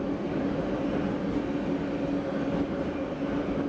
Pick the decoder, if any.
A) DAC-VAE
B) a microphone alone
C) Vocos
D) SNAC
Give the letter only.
B